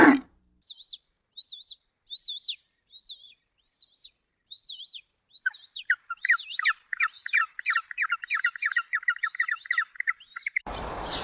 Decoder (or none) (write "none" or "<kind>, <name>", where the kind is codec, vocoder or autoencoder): vocoder, BigVGAN v2